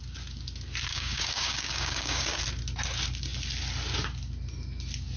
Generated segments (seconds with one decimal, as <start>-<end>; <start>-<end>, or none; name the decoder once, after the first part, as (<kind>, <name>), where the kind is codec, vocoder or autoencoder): 0.9-2.4 (codec, DAC)